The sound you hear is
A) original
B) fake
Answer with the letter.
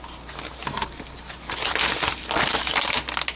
A